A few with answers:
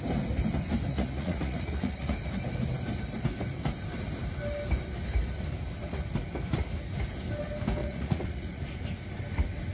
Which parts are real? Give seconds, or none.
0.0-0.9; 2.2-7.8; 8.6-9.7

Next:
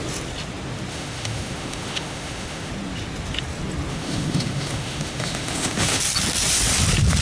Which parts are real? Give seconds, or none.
0.0-0.9; 2.7-3.9; 6.0-7.2

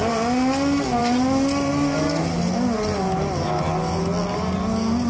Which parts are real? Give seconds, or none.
0.0-5.1

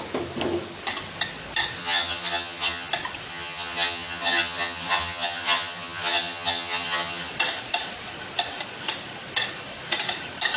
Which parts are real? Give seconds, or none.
0.0-1.8; 2.9-3.3; 7.3-10.6

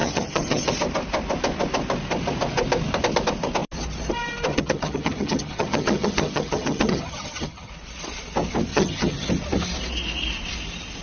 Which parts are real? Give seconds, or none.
0.7-4.5; 7.7-8.7; 9.3-11.0

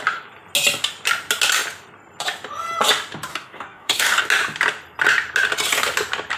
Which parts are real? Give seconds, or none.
0.0-3.3; 4.2-6.4